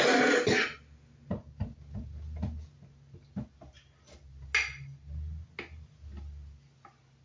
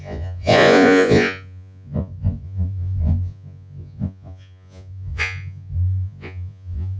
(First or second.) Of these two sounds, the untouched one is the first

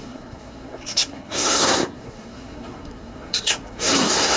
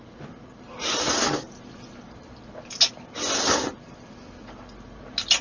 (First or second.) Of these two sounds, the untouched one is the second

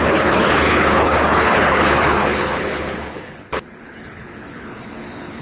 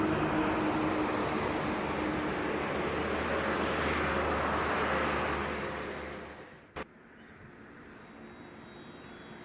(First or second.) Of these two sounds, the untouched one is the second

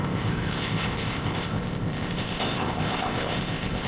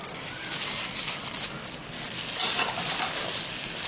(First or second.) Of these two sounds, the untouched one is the second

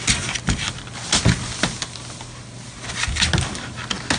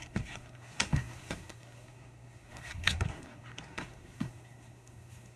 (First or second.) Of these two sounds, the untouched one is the first